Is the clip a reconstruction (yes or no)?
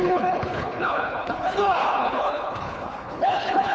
yes